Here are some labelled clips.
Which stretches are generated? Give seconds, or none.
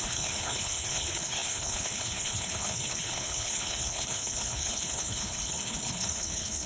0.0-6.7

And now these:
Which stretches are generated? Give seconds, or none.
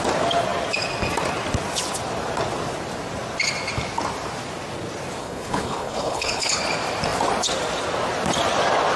5.2-6.6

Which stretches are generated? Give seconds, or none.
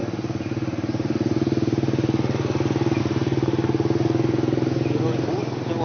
none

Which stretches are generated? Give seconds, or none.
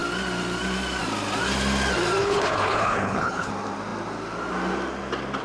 2.2-3.5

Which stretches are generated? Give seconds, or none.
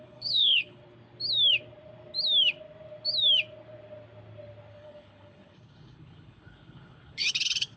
0.0-0.8; 4.7-7.8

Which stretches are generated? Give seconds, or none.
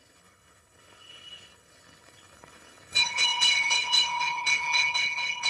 0.0-5.5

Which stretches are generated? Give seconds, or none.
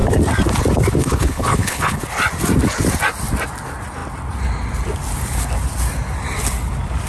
1.0-2.0